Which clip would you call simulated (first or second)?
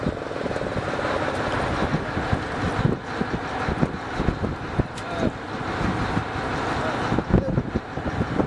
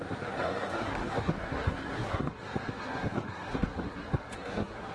second